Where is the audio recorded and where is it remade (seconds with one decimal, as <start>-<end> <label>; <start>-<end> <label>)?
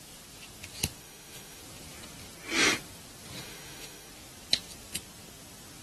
0.0-1.0 recorded; 1.0-1.6 remade; 1.6-3.4 recorded; 3.4-4.1 remade; 4.1-5.8 recorded